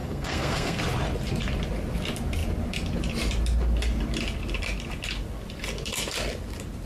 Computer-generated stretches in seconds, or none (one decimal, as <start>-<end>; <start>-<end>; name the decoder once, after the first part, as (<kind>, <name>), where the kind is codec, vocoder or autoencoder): 0.0-0.8 (codec, SNAC)